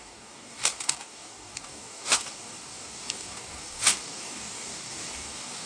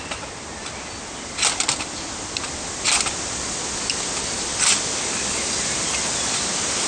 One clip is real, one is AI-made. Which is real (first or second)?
second